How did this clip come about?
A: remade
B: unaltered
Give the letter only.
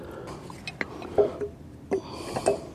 B